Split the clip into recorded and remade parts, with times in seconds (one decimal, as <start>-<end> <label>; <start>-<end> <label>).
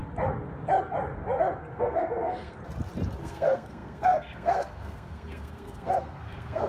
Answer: 0.0-1.7 recorded; 1.7-2.6 remade; 2.6-3.2 recorded; 3.2-6.7 remade